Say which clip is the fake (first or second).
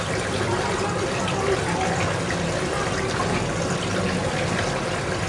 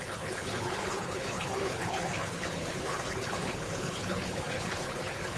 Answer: second